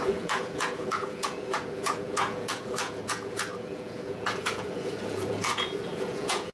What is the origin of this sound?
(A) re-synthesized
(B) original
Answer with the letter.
A